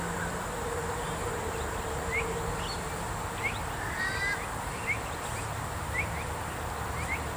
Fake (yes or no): no